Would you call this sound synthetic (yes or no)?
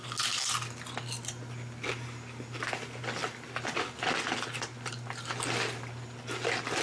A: no